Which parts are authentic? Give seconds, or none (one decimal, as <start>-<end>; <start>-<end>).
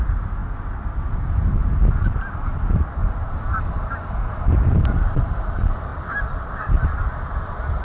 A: 0.0-3.0; 5.2-5.9; 7.1-7.8